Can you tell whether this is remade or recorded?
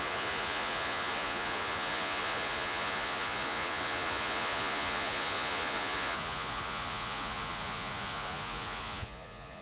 remade